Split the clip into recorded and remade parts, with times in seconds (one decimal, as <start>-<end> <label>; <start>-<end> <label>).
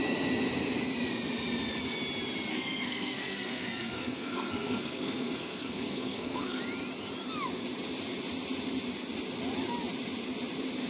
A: 0.0-2.5 recorded; 2.5-6.6 remade; 6.6-10.9 recorded